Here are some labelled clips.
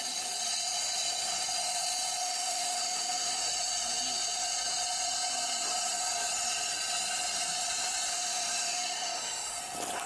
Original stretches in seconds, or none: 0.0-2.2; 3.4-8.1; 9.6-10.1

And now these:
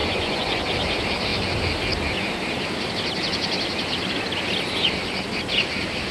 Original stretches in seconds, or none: 0.6-6.1

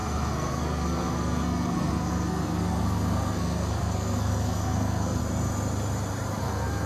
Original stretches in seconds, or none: 5.2-6.4

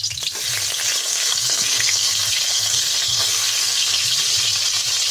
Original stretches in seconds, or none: 0.0-1.0; 4.1-5.1

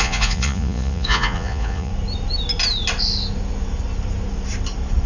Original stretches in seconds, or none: 1.9-5.1